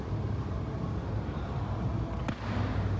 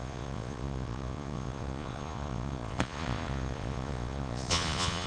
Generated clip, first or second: second